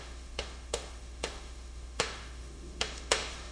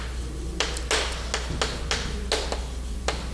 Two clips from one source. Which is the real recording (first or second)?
second